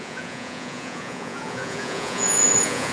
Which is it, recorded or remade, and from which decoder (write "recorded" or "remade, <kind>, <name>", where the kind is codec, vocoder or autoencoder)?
remade, vocoder, Vocos